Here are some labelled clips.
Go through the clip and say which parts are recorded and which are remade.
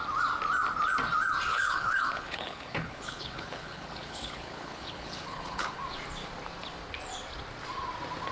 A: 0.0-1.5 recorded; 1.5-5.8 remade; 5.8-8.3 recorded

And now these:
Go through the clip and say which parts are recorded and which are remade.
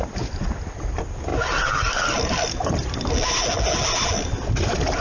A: 0.0-5.0 recorded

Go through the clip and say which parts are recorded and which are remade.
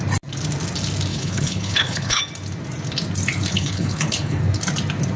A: 0.0-1.1 recorded; 1.1-2.2 remade; 2.2-3.5 recorded; 3.5-4.4 remade; 4.4-5.2 recorded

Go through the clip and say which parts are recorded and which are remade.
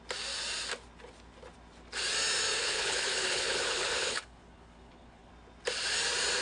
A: 0.0-2.6 recorded; 2.6-5.3 remade; 5.3-6.4 recorded